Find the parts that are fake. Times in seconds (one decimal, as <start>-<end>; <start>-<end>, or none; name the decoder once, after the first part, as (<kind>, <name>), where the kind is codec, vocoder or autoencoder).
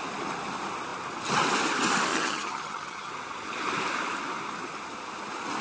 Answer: 2.1-3.1 (vocoder, HiFi-GAN)